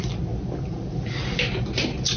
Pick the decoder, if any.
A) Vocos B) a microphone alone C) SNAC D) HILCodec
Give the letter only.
B